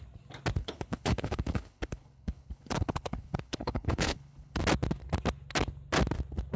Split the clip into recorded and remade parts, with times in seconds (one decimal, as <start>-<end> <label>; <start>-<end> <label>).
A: 0.0-0.6 recorded; 0.6-4.6 remade; 4.6-6.6 recorded